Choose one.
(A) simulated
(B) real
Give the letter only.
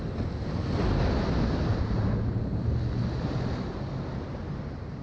B